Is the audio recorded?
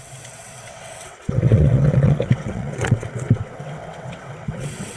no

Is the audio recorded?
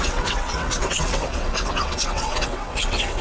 no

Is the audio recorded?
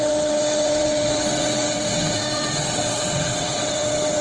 no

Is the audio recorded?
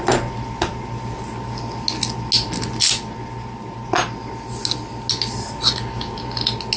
yes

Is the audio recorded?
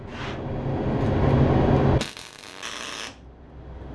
yes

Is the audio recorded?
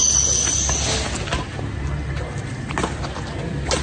yes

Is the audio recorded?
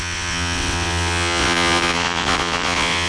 no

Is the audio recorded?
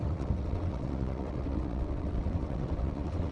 no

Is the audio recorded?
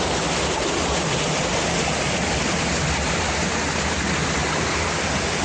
yes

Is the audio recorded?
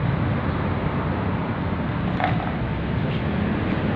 yes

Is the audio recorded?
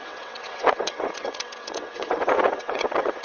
no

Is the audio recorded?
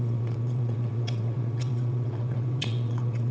no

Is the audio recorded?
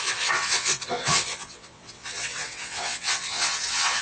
no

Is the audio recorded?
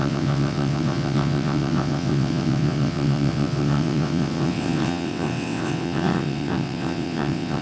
no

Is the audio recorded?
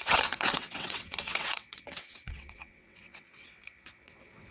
no